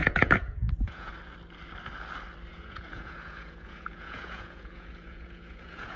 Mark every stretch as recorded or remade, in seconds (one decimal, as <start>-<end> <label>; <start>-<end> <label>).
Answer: 0.0-1.1 remade; 1.1-2.5 recorded; 2.5-6.0 remade